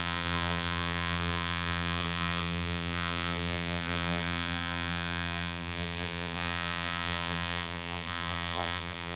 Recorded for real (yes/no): no